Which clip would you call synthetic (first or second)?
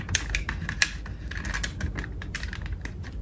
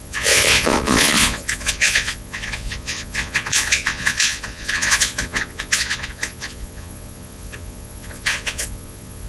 second